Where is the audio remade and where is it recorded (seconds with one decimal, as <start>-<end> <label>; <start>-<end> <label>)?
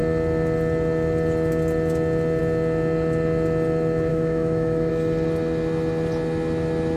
0.0-4.1 recorded; 4.1-4.9 remade; 4.9-7.0 recorded